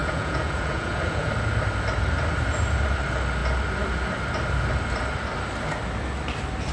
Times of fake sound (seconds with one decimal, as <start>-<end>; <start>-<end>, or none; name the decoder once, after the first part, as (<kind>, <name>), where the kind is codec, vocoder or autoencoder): 0.0-1.3 (vocoder, Vocos)